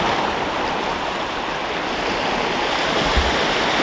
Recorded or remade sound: recorded